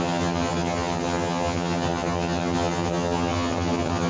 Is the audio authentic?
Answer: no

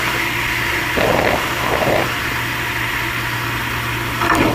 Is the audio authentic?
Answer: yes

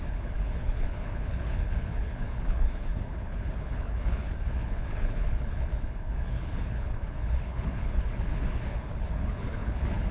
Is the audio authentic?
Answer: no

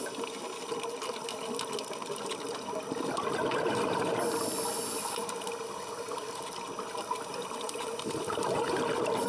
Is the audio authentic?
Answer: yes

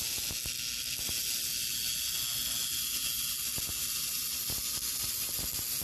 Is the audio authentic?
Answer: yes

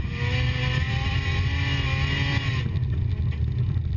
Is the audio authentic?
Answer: yes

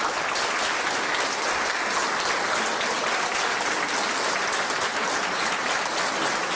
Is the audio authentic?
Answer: yes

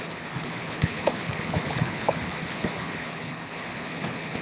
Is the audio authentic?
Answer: no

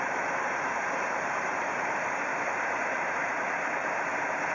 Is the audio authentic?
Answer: yes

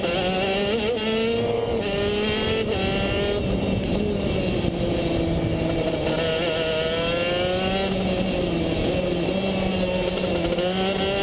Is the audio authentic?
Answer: yes